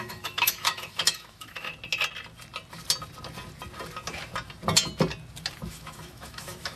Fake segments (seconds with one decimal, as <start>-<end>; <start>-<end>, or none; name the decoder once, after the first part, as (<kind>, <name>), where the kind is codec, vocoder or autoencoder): 0.0-1.7 (autoencoder, DAC-VAE); 5.7-6.8